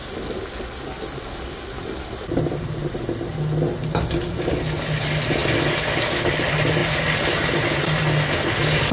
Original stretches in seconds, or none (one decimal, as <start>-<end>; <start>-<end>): 0.0-8.9